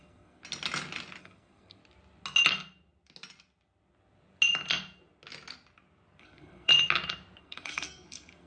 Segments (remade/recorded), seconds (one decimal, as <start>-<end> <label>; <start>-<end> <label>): 0.0-0.4 remade; 0.4-1.2 recorded; 1.2-1.8 remade; 1.8-6.2 recorded; 6.2-6.7 remade; 6.7-7.4 recorded; 7.4-8.5 remade